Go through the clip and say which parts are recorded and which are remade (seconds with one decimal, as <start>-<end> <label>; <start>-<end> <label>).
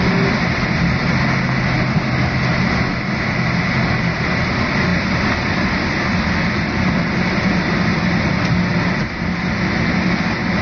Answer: 0.0-4.9 recorded; 4.9-8.2 remade; 8.2-10.6 recorded